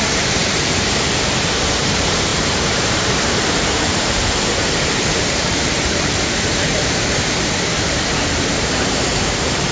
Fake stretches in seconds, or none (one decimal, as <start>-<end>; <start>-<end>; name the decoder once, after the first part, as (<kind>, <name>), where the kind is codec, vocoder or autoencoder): 0.0-9.7 (vocoder, BigVGAN v2)

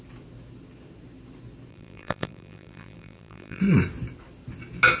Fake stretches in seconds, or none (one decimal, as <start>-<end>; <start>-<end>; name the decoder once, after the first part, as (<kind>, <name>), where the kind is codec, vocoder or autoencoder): 1.7-3.6 (vocoder, BigVGAN v2)